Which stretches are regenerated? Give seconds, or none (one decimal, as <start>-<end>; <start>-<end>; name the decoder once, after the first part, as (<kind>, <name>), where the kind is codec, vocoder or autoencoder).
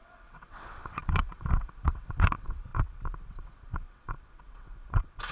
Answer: 0.0-5.3 (vocoder, WaveNeXt)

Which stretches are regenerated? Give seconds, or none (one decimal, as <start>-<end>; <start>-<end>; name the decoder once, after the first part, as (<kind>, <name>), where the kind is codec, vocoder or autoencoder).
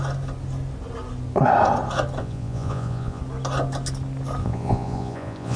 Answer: 2.2-3.2 (vocoder, Vocos); 4.4-5.6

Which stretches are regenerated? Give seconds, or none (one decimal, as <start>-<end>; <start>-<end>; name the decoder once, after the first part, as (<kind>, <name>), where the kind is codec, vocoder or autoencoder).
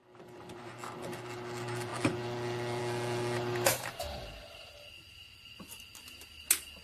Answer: none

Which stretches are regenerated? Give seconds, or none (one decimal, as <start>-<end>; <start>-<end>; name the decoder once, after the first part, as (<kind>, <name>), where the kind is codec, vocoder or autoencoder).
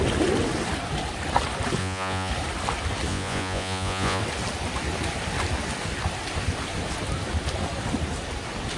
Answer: 1.8-2.3 (vocoder, Vocos); 3.1-4.2